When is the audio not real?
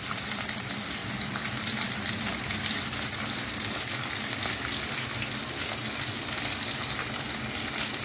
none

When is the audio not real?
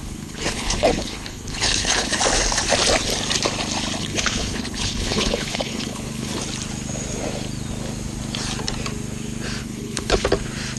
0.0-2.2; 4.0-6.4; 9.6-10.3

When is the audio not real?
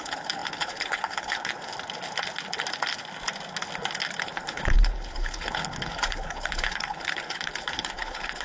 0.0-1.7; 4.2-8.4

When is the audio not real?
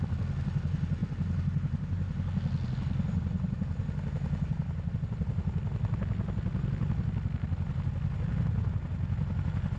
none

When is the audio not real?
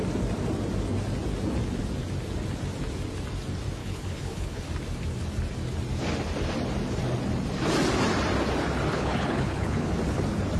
3.8-4.6; 8.9-9.9